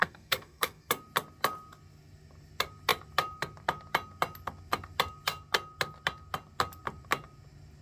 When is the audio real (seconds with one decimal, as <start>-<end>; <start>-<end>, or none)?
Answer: 0.9-7.8